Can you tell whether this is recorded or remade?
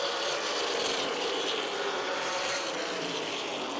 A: remade